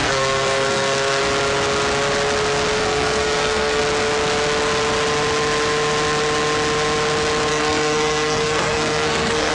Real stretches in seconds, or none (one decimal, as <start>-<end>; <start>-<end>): 1.2-2.8; 3.8-7.5